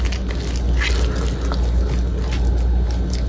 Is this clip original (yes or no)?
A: yes